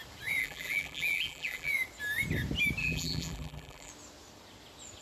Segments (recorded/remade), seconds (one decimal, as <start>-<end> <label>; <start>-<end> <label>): 0.0-0.4 recorded; 0.4-1.7 remade; 1.7-2.8 recorded; 2.8-3.9 remade; 3.9-5.0 recorded